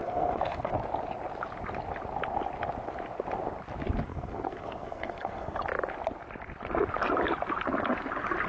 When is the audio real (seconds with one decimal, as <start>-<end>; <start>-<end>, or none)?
0.7-4.1; 5.6-8.5